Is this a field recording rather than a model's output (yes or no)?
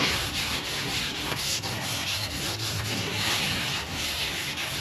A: no